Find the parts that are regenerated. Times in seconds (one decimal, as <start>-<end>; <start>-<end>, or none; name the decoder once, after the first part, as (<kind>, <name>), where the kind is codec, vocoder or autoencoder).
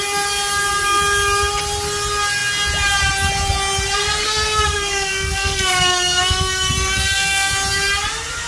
4.2-7.5 (codec, SNAC)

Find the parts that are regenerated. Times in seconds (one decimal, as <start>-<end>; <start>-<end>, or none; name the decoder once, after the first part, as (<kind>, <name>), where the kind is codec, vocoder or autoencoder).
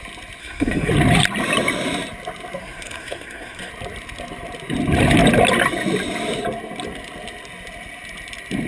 0.4-0.9 (codec, SNAC); 2.6-3.7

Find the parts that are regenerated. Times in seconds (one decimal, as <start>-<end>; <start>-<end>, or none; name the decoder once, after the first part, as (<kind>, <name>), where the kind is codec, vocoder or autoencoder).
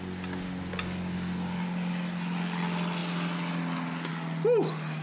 none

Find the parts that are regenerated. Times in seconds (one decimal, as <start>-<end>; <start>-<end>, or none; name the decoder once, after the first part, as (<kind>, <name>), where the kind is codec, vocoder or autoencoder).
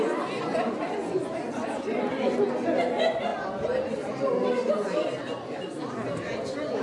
none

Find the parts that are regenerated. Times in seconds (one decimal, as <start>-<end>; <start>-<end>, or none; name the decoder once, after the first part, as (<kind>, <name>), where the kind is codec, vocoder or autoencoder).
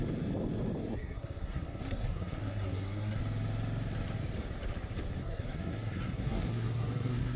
0.8-3.2 (codec, SNAC); 5.2-7.4